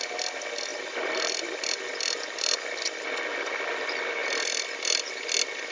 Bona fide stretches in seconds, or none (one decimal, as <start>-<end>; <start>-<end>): 0.0-0.7; 3.5-4.2; 5.2-5.7